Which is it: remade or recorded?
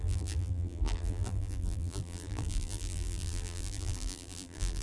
remade